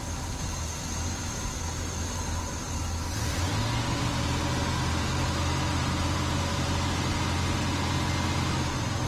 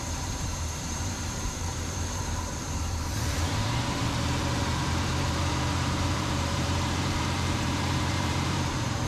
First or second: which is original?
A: first